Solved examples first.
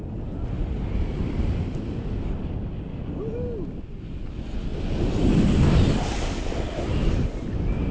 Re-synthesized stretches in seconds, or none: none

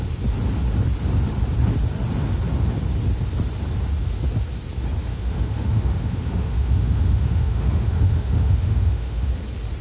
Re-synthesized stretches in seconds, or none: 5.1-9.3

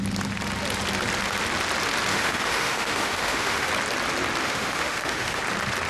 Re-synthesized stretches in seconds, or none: 2.1-3.7; 4.4-5.4

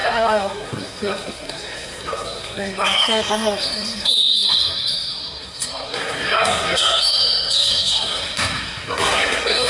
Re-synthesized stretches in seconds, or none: 0.0-9.7

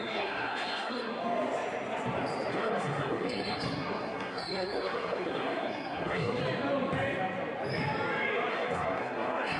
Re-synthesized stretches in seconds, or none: 0.0-1.1; 2.5-6.4; 8.5-9.6

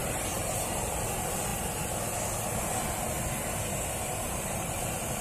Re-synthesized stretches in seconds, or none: 0.0-1.1; 4.0-5.2

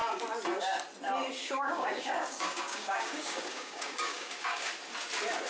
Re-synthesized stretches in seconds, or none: 1.4-4.7

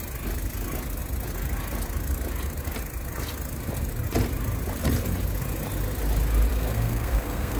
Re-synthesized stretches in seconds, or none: 6.5-7.6